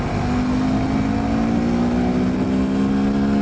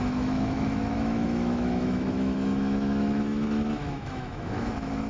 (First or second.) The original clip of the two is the first